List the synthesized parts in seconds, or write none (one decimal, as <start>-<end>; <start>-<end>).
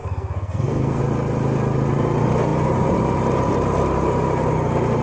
0.0-1.0